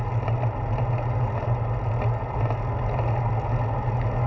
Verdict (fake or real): real